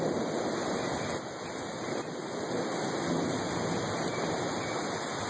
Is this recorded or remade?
recorded